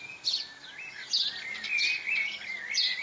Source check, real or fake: real